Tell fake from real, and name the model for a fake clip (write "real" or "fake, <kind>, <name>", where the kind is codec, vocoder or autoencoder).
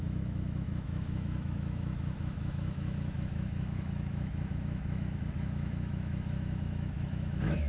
fake, autoencoder, DAC-VAE